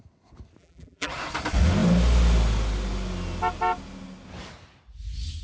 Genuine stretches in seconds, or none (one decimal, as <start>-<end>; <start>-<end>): 0.0-0.6; 1.1-5.4